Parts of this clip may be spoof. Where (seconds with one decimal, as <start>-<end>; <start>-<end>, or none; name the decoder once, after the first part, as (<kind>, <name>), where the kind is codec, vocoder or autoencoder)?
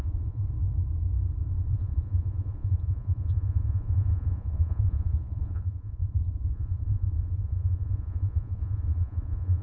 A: 0.0-0.4 (vocoder, Vocos); 1.7-9.6